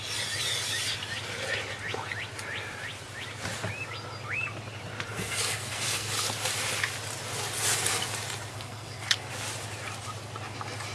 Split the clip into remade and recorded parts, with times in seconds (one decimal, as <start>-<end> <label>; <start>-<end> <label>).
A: 0.0-5.1 recorded; 5.1-6.1 remade; 6.1-8.5 recorded; 8.5-9.3 remade; 9.3-10.9 recorded